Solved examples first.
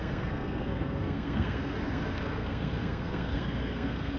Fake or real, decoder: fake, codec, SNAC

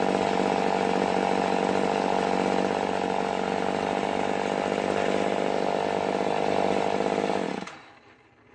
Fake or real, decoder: real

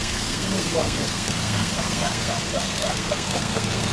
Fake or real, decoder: fake, codec, SNAC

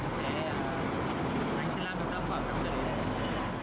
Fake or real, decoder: real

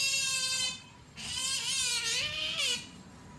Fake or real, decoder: real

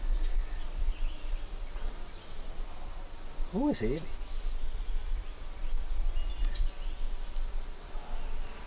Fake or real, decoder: real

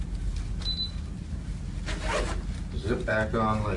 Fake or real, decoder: real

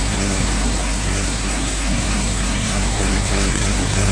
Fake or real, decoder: fake, codec, SNAC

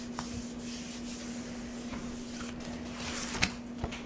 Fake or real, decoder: real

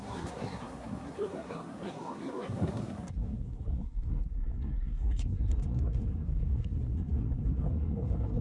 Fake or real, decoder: fake, codec, SNAC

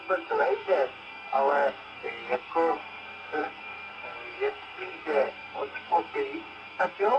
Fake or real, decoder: fake, codec, SNAC